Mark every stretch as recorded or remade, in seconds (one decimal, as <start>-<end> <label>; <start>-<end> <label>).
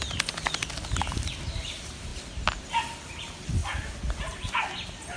0.0-5.2 recorded